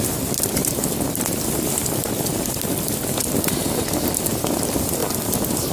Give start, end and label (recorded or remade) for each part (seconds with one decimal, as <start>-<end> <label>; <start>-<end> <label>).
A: 0.0-5.7 recorded